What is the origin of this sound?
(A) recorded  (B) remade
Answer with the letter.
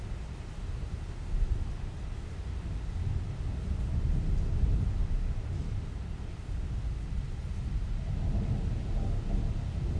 A